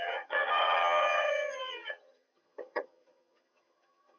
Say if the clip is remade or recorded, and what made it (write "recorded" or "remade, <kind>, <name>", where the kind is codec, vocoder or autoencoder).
remade, vocoder, HiFi-GAN